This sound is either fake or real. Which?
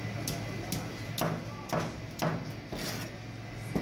real